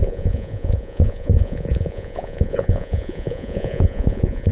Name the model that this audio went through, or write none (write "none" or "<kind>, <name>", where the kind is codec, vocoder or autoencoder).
vocoder, Vocos